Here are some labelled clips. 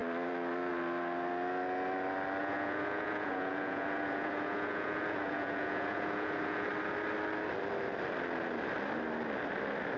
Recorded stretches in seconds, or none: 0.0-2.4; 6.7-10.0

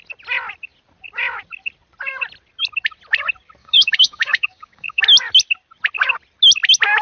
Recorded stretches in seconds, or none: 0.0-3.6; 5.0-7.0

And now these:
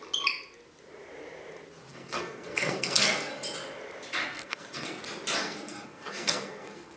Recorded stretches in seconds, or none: 0.0-1.9; 3.3-4.2; 5.0-5.4